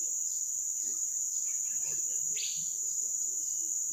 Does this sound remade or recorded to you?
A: recorded